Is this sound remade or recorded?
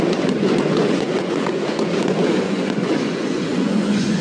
remade